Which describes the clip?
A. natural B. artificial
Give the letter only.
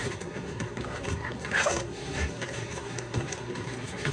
B